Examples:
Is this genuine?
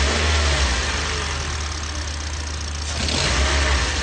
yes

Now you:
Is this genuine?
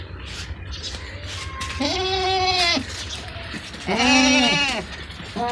yes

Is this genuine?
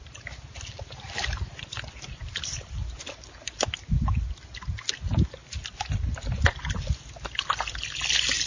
yes